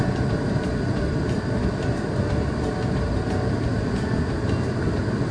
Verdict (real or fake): real